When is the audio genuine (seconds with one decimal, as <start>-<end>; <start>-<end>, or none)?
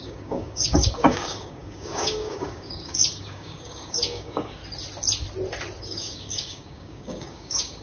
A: 4.6-5.8